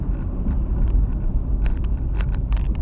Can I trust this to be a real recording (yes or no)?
yes